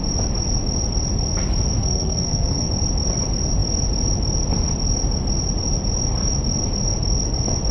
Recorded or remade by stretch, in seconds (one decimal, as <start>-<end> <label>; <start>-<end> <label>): 0.0-1.8 recorded; 1.8-2.7 remade; 2.7-7.7 recorded